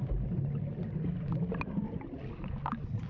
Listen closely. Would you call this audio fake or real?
real